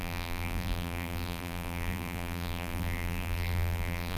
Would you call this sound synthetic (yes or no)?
yes